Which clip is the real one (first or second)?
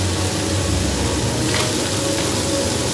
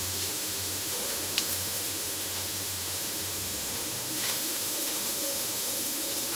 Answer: first